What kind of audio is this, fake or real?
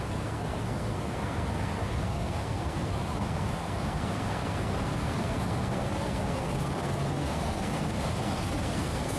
fake